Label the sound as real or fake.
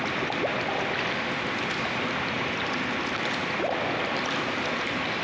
real